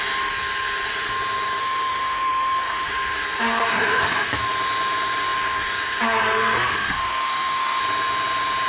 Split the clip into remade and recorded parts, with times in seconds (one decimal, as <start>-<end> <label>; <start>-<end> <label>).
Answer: 0.0-1.6 recorded; 1.6-2.9 remade; 2.9-3.7 recorded; 3.7-4.3 remade; 4.3-6.7 recorded; 6.7-7.8 remade; 7.8-8.7 recorded